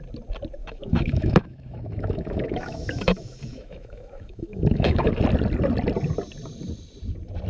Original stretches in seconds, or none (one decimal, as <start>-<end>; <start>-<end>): 0.0-0.6; 5.1-7.5